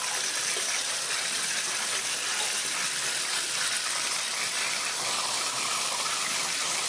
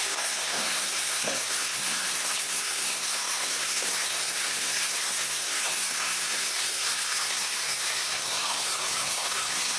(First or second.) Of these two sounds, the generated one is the second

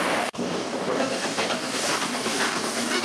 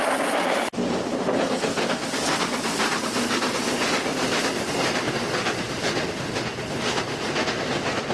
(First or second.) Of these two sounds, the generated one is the first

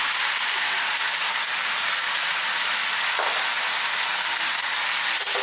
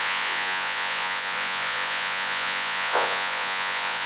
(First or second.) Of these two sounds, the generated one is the second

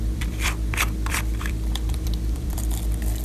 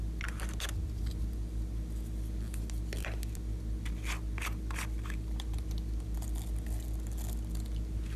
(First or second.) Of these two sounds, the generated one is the first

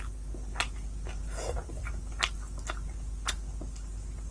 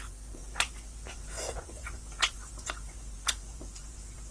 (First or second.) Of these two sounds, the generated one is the second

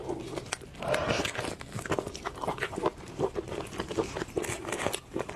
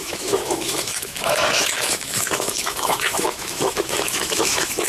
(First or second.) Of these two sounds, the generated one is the second